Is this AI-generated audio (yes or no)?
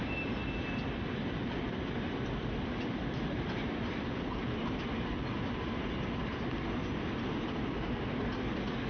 no